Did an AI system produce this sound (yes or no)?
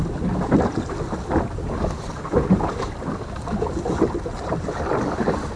no